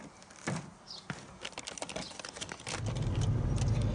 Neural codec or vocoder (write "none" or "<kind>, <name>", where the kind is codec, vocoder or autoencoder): none